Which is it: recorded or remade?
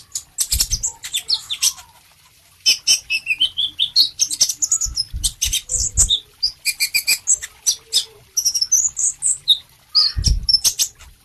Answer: recorded